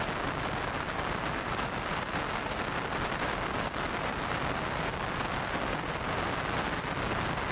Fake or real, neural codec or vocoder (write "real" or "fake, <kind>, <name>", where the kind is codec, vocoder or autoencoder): real